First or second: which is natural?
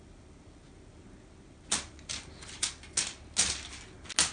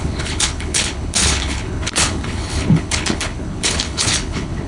first